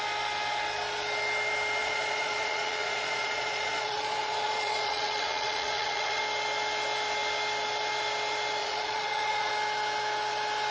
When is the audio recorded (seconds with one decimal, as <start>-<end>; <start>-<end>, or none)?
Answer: 0.0-1.8; 6.2-8.6; 9.5-10.7